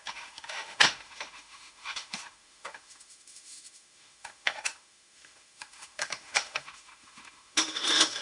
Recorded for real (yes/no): no